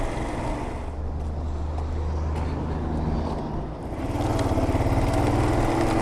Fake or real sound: real